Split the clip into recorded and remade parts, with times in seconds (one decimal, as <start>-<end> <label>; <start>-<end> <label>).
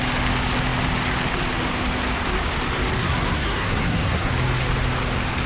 0.0-3.0 recorded; 3.0-4.3 remade; 4.3-5.5 recorded